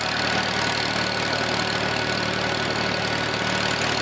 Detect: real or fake real